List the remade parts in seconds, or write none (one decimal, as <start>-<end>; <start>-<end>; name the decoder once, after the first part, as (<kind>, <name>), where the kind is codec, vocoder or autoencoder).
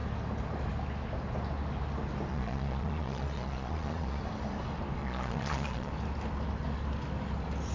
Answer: 2.3-4.2 (vocoder, Vocos); 5.0-5.9